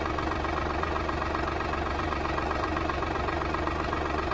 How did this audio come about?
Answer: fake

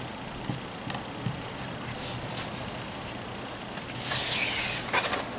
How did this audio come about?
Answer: real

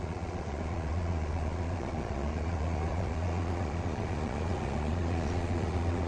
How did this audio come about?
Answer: fake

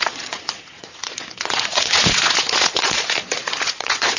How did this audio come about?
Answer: fake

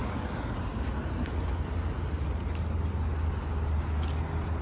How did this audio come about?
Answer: real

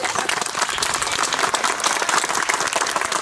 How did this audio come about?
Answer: real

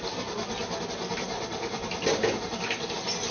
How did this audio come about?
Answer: real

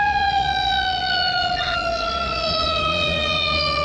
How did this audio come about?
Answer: fake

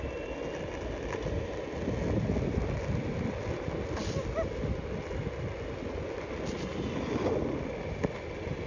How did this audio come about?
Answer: real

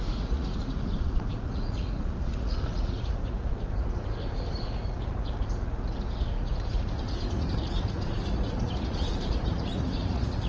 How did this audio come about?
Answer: fake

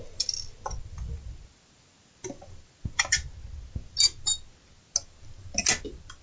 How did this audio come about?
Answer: real